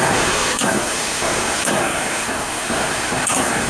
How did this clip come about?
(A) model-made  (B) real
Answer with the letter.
A